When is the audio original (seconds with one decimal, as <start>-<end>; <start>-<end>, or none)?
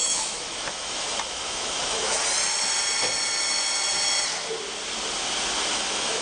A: 2.2-5.7